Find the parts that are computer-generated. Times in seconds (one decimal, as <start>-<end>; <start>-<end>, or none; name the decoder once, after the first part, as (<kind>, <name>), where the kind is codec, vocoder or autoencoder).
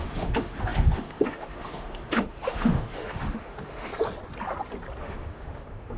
0.0-3.9 (autoencoder, DAC-VAE); 5.0-6.0